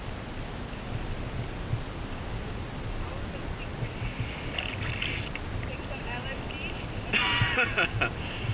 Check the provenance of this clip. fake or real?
real